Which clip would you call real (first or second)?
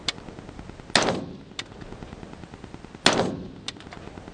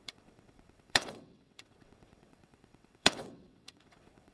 first